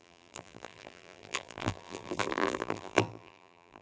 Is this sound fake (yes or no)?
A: yes